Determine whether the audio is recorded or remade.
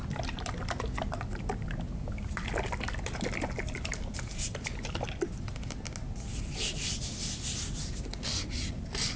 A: recorded